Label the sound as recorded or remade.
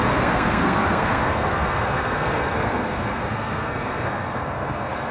remade